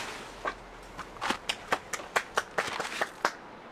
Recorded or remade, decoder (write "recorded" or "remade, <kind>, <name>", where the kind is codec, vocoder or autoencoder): recorded